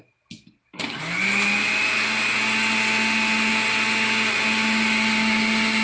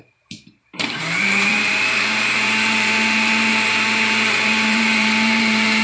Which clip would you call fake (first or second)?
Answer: second